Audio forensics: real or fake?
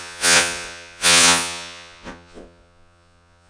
fake